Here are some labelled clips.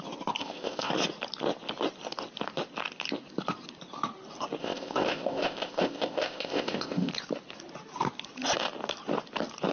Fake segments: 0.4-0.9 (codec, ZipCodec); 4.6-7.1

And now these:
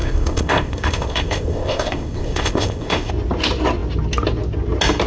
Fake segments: 0.0-3.1 (codec, ZipCodec)